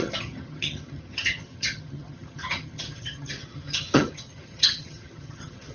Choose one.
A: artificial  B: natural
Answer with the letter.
A